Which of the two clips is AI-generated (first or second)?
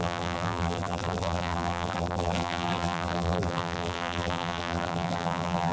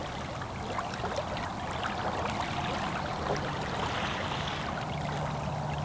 first